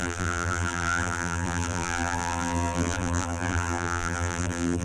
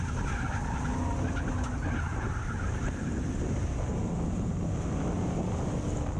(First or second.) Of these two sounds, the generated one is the first